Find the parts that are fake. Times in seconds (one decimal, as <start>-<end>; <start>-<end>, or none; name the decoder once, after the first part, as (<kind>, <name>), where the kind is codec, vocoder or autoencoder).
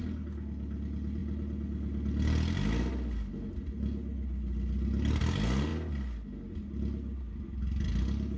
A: none